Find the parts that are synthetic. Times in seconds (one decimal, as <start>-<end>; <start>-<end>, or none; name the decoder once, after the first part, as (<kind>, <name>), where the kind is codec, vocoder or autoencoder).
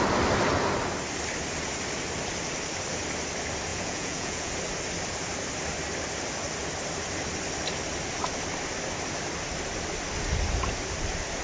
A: 3.7-4.5 (vocoder, Vocos)